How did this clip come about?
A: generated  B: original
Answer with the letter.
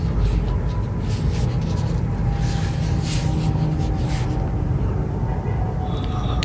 B